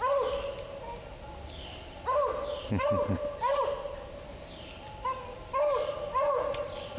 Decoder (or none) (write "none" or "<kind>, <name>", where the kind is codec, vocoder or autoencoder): none